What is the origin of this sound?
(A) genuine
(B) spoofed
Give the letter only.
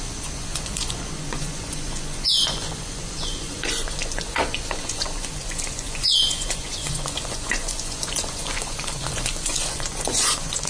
B